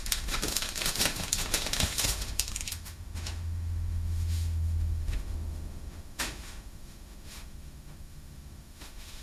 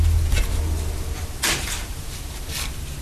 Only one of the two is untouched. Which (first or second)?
second